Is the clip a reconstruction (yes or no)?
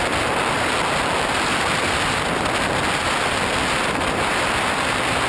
no